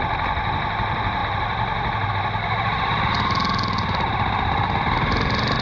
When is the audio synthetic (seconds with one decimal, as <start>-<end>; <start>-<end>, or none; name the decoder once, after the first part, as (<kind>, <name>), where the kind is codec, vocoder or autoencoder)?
none